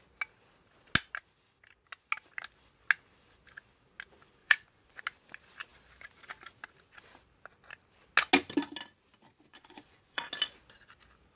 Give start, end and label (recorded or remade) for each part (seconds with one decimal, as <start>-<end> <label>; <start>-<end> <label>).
0.0-4.4 recorded; 4.4-5.0 remade; 5.0-9.5 recorded; 9.5-10.3 remade; 10.3-11.4 recorded